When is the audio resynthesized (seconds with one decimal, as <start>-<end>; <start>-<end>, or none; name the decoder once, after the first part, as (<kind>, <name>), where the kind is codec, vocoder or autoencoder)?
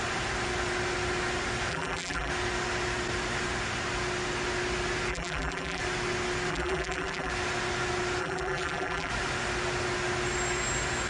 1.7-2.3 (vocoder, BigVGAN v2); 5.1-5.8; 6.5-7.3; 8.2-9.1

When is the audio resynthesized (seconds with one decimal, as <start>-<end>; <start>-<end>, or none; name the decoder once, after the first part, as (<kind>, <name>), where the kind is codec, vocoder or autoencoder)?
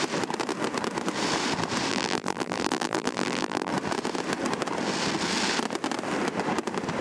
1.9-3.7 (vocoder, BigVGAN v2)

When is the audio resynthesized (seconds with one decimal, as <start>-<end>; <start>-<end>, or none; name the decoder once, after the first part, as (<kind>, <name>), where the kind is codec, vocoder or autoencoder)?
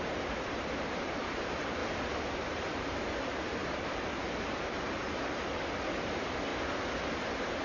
0.0-1.8 (vocoder, BigVGAN v2); 2.7-6.5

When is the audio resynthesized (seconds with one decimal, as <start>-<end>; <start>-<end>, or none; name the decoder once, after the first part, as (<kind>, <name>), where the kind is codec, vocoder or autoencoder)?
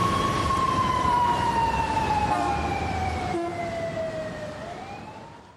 0.0-3.2 (vocoder, BigVGAN v2)